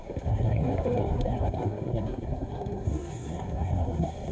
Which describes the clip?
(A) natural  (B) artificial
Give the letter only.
B